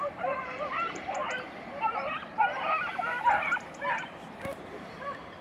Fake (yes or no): yes